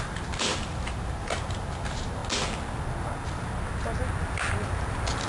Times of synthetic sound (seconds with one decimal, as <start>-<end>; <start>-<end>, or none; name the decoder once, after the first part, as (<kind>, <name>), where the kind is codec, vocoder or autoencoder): 0.0-2.2 (vocoder, BigVGAN v2); 4.7-5.3